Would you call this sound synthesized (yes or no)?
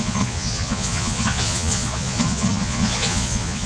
yes